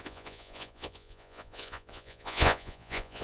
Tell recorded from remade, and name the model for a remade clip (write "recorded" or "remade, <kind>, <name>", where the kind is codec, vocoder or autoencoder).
remade, vocoder, Vocos